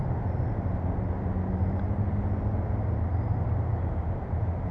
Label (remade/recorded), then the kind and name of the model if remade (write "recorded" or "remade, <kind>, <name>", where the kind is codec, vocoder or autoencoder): recorded